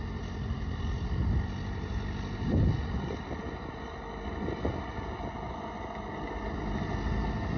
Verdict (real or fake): real